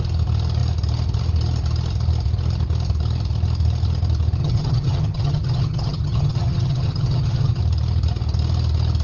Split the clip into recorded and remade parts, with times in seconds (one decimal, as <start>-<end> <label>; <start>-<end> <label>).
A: 0.0-4.4 recorded; 4.4-7.6 remade; 7.6-9.0 recorded